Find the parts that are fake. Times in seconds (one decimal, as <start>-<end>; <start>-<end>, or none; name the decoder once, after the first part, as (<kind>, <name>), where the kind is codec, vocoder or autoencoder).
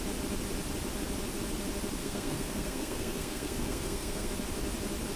2.0-4.3 (codec, SNAC)